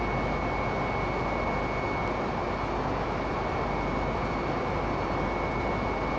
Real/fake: real